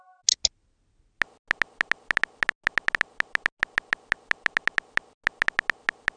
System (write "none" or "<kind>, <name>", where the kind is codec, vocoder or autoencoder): none